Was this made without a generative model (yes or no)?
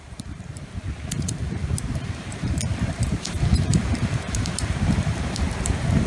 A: no